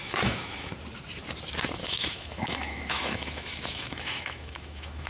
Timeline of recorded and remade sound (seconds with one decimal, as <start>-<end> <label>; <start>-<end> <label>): 0.0-0.7 remade; 0.7-1.8 recorded; 1.8-5.1 remade